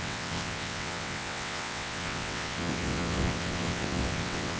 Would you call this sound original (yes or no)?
no